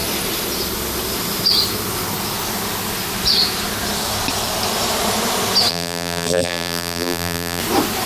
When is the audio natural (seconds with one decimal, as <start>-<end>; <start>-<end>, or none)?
0.0-5.7; 7.6-8.1